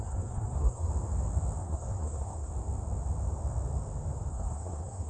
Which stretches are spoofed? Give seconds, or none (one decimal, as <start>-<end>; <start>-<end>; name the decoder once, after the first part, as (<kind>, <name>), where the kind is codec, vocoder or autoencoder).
0.0-0.9 (codec, SNAC); 1.6-2.5; 4.3-5.1